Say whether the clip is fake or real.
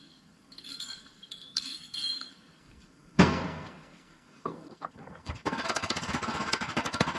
fake